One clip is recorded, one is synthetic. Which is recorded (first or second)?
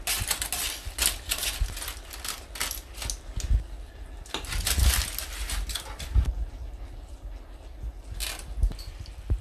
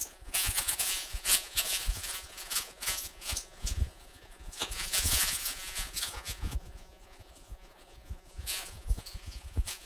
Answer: first